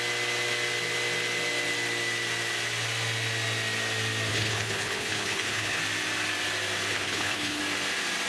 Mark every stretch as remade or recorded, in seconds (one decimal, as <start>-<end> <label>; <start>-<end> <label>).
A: 0.0-4.3 recorded; 4.3-5.8 remade; 5.8-6.9 recorded; 6.9-7.6 remade; 7.6-8.3 recorded